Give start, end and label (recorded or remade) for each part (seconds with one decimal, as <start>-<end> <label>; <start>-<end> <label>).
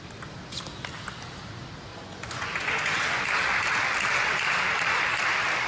0.0-1.9 recorded; 1.9-3.2 remade; 3.2-5.7 recorded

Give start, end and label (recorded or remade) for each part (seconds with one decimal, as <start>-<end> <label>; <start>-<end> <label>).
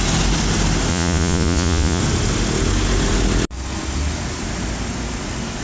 0.0-0.9 recorded; 0.9-2.0 remade; 2.0-5.6 recorded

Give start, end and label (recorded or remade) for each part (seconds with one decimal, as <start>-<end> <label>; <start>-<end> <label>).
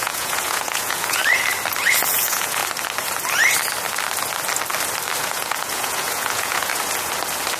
0.0-1.2 remade; 1.2-2.1 recorded; 2.1-2.6 remade; 2.6-5.2 recorded; 5.2-6.7 remade; 6.7-7.6 recorded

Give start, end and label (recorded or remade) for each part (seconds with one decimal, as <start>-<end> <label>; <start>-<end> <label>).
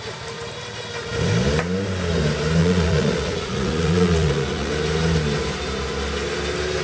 0.0-2.6 recorded; 2.6-4.7 remade; 4.7-6.8 recorded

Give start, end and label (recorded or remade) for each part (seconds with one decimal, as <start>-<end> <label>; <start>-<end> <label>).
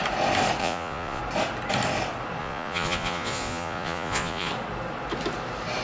0.0-0.6 recorded; 0.6-1.2 remade; 1.2-2.4 recorded; 2.4-4.5 remade; 4.5-5.8 recorded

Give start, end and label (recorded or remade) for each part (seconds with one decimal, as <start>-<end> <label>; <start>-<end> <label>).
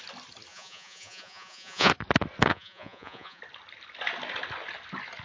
0.0-0.5 recorded; 0.5-1.9 remade; 1.9-2.5 recorded; 2.5-3.4 remade; 3.4-5.2 recorded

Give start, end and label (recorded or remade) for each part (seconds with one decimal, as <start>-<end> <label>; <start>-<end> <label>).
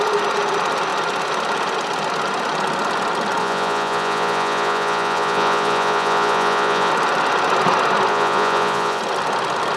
0.0-3.4 recorded; 3.4-6.9 remade; 6.9-8.1 recorded; 8.1-9.0 remade; 9.0-9.8 recorded